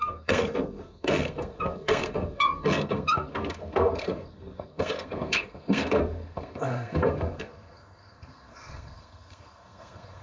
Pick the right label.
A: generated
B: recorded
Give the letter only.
A